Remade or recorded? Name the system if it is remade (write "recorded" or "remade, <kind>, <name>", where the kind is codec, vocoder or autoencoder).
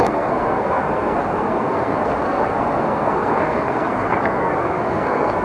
remade, codec, SNAC